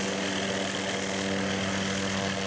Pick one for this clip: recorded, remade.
recorded